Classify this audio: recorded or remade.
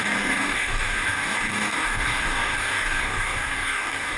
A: remade